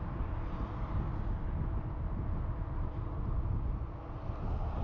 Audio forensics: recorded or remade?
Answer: recorded